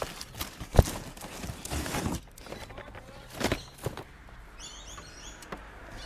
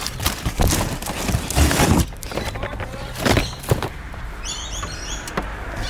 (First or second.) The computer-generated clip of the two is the second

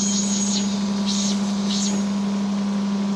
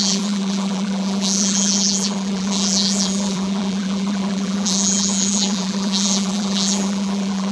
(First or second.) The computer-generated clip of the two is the second